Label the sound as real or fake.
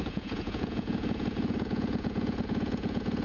fake